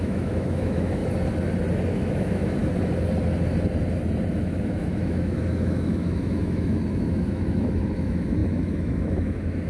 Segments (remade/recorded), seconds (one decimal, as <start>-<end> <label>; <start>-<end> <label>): 0.0-1.0 remade; 1.0-1.9 recorded; 1.9-2.6 remade; 2.6-4.3 recorded; 4.3-9.7 remade